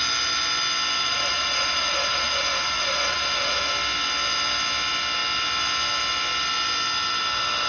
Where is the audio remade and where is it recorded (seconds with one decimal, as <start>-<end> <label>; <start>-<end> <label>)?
0.0-1.0 recorded; 1.0-3.7 remade; 3.7-7.7 recorded

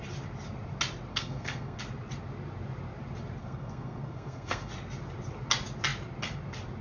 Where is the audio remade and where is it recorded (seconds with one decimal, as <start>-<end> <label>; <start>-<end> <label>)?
0.0-1.1 recorded; 1.1-1.8 remade; 1.8-3.4 recorded; 3.4-4.7 remade; 4.7-6.8 recorded